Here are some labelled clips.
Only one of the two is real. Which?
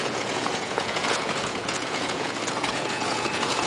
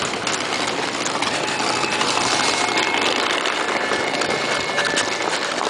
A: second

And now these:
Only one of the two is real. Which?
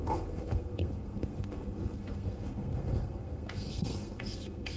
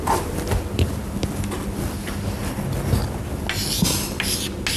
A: second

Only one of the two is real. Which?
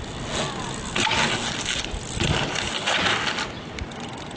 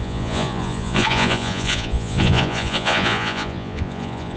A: first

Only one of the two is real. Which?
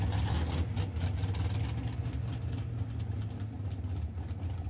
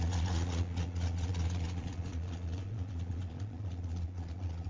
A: first